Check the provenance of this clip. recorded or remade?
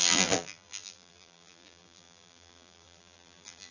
remade